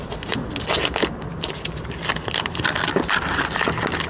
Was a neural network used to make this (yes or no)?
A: no